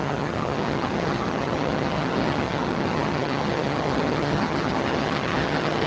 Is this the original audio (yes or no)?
no